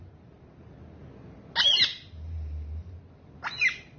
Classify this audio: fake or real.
real